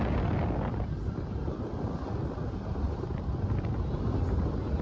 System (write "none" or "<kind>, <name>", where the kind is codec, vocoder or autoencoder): none